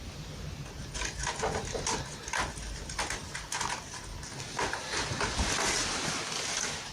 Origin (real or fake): real